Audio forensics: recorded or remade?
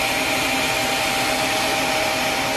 recorded